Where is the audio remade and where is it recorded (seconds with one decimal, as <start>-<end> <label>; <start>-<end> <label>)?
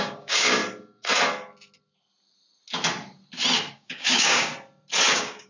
0.0-0.6 remade; 0.6-3.7 recorded; 3.7-4.5 remade; 4.5-5.1 recorded; 5.1-5.5 remade